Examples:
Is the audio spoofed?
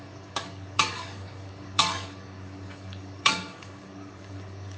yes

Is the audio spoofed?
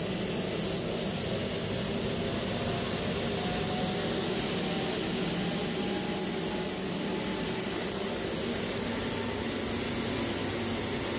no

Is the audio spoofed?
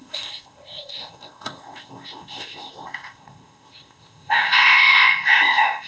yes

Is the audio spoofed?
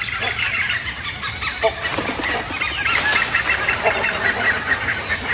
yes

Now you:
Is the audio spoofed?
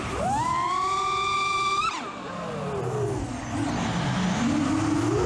no